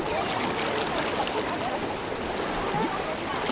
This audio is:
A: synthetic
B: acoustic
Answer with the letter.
B